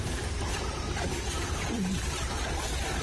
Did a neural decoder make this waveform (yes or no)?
yes